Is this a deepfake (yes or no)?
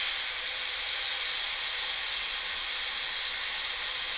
no